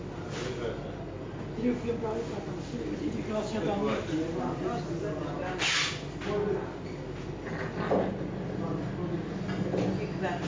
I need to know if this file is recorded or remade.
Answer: recorded